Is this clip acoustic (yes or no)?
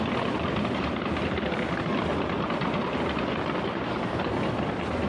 yes